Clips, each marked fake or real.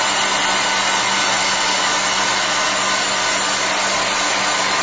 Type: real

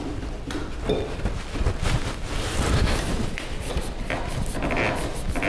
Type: real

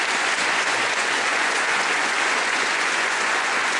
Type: fake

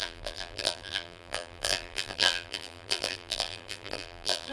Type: fake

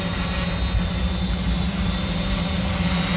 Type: real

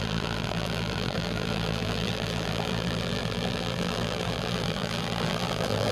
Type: fake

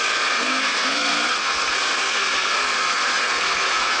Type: fake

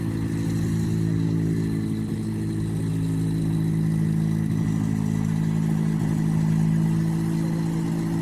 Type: real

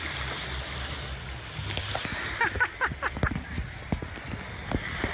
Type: real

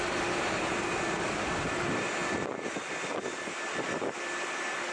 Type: real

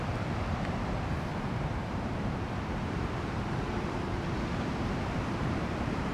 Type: fake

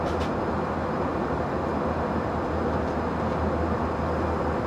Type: real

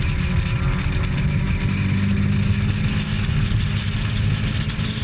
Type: real